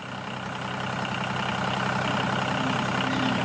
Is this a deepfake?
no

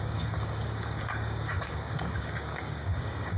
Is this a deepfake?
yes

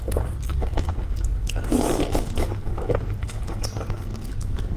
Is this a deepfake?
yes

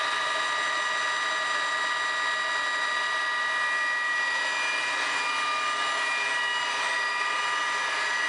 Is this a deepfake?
no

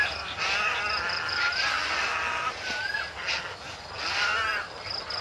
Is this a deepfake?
no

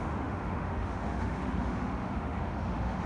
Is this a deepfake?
yes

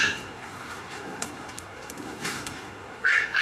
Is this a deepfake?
yes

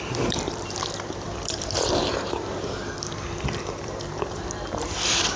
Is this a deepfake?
yes